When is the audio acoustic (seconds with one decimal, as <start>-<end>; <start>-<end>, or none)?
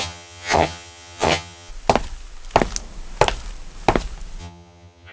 1.7-4.4